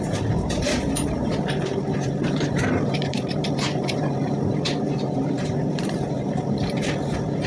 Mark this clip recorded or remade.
remade